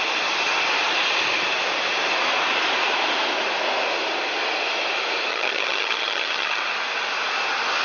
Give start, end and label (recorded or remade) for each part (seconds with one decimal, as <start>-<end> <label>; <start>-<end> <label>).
0.0-5.3 recorded; 5.3-6.6 remade; 6.6-7.8 recorded